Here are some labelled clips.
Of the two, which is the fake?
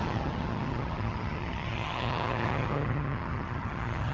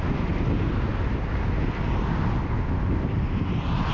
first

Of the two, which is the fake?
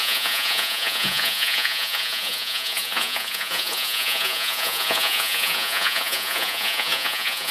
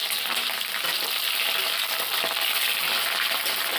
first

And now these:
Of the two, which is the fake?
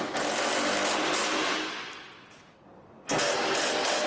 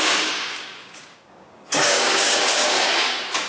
second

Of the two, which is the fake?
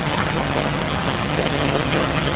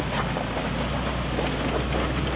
first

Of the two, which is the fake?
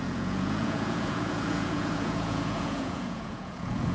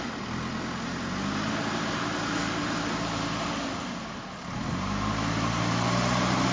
first